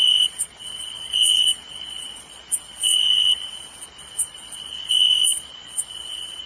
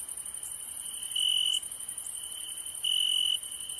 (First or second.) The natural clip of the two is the second